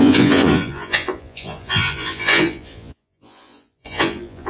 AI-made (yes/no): yes